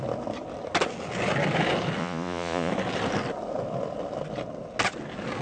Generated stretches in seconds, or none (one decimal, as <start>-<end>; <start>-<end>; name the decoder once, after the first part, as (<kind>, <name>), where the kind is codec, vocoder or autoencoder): 2.0-2.7 (vocoder, Vocos)